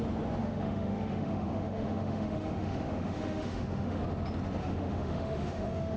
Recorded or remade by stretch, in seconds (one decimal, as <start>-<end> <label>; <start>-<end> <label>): 0.0-0.4 recorded; 0.4-4.0 remade; 4.0-4.6 recorded; 4.6-6.0 remade